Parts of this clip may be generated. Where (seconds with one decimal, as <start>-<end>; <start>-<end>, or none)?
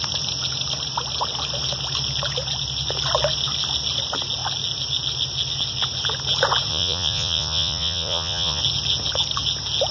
6.7-8.6